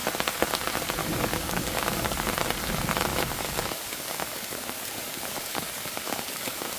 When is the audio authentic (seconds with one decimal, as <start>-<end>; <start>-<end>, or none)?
0.0-1.0; 2.3-3.1